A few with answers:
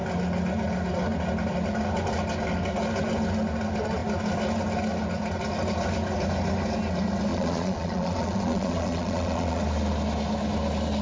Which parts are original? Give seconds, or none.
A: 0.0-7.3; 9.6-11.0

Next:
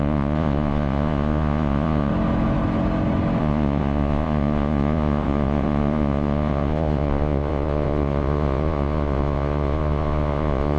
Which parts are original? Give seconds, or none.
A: 2.1-3.4

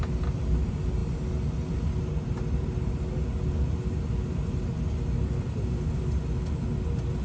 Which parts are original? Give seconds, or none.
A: 0.0-7.2

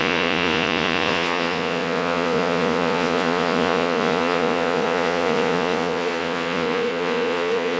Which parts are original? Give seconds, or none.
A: none

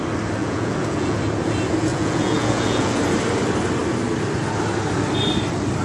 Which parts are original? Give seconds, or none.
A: 0.0-0.4; 1.2-1.9; 3.0-5.8

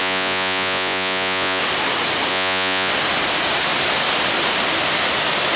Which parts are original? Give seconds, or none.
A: 1.6-2.3; 2.9-5.6